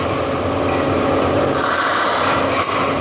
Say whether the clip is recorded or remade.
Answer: recorded